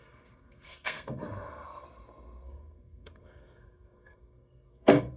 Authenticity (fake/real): fake